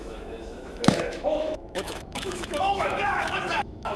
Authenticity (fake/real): fake